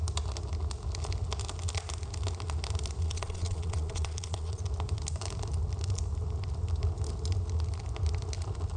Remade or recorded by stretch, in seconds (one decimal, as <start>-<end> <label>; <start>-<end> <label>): 0.0-3.0 recorded; 3.0-4.6 remade; 4.6-8.8 recorded